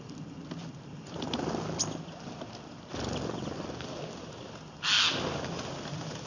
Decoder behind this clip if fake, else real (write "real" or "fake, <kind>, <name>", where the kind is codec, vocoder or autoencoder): real